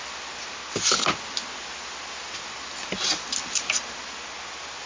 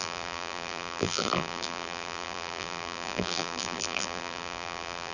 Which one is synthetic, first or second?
second